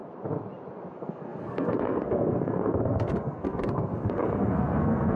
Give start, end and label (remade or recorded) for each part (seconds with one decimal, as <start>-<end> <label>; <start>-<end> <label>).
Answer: 0.0-0.9 recorded; 0.9-5.2 remade

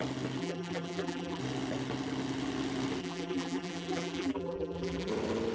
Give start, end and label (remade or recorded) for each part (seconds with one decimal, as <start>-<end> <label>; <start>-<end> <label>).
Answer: 0.0-0.4 recorded; 0.4-1.4 remade; 1.4-3.0 recorded; 3.0-5.1 remade; 5.1-5.5 recorded